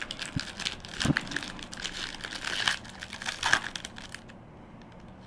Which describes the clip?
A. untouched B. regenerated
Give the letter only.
A